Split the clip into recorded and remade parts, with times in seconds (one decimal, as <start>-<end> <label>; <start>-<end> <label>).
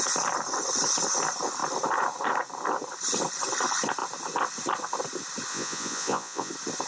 0.0-5.5 recorded; 5.5-6.5 remade; 6.5-6.9 recorded